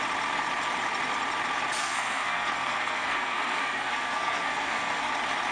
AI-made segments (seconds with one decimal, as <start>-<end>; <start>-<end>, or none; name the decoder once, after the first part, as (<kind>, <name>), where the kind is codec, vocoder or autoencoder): 1.8-5.1 (codec, SNAC)